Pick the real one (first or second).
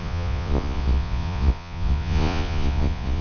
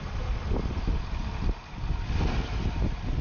second